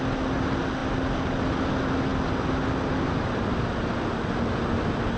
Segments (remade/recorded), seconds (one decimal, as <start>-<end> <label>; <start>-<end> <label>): 0.0-5.2 recorded